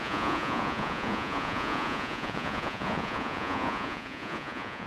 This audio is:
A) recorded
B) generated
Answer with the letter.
B